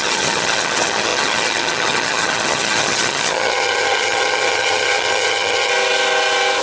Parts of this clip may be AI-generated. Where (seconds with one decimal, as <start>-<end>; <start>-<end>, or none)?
0.0-5.7